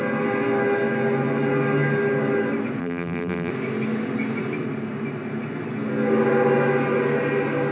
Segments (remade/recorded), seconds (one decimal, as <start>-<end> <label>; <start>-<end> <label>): 0.0-2.8 recorded; 2.8-3.5 remade; 3.5-7.7 recorded